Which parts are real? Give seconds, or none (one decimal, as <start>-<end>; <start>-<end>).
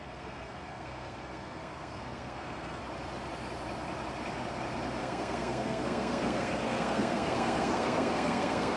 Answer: 2.8-5.0